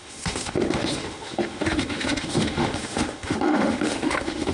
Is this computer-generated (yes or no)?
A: yes